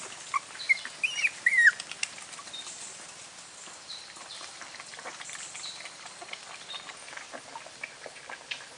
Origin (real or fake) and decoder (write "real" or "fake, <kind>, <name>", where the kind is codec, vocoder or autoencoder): real